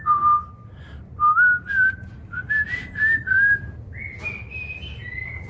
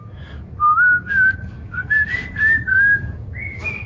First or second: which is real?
first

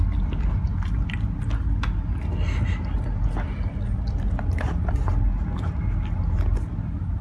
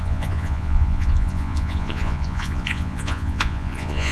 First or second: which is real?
first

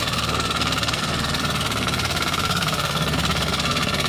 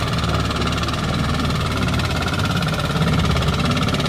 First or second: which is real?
second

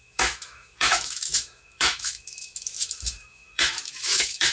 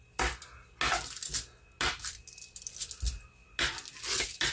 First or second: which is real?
second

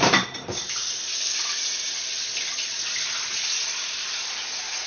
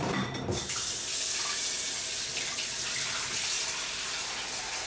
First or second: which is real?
second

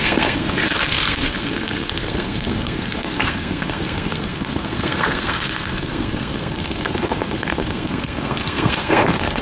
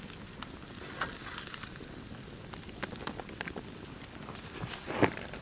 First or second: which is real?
second